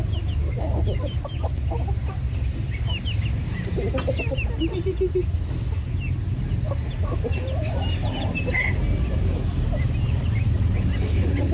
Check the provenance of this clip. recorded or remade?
recorded